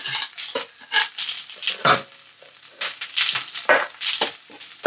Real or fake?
real